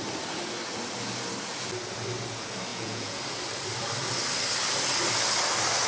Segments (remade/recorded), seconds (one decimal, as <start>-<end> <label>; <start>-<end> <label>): 0.0-2.7 recorded; 2.7-3.2 remade; 3.2-5.9 recorded